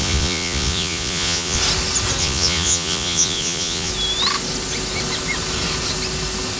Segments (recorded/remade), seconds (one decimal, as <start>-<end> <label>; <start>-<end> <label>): 0.0-1.6 remade; 1.6-2.2 recorded; 2.2-3.9 remade; 3.9-6.6 recorded